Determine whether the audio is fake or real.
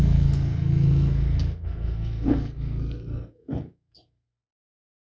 fake